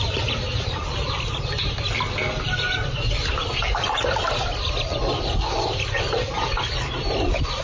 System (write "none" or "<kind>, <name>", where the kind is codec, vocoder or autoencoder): vocoder, BigVGAN v2